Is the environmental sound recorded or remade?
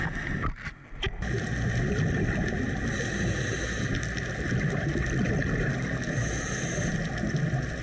recorded